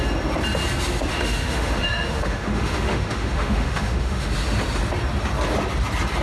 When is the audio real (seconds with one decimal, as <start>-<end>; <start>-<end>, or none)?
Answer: 0.0-1.1; 4.3-6.2